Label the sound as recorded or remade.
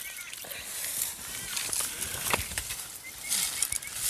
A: recorded